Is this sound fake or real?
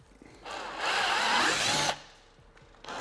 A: real